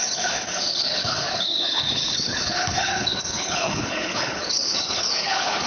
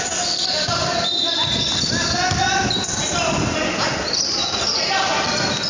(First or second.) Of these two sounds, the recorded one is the second